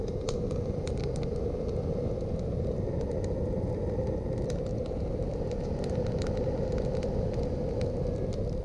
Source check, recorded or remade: recorded